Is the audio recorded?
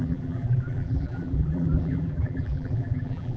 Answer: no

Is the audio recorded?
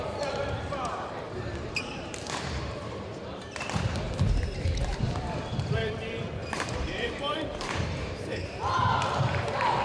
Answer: no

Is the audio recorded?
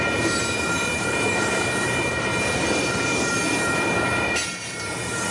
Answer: no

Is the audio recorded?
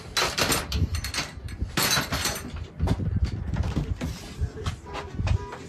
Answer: yes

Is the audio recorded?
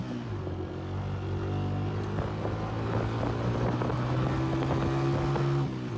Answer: yes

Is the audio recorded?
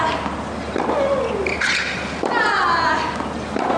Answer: yes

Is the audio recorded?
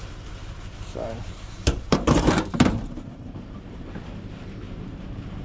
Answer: no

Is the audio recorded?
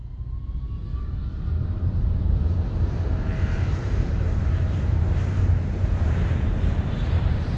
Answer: no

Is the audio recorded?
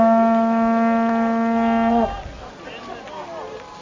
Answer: yes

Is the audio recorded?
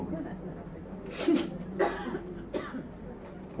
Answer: yes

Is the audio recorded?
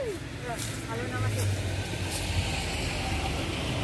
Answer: yes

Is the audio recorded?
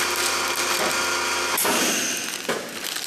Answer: yes